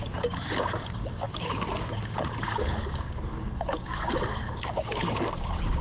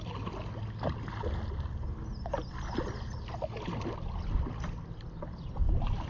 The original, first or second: second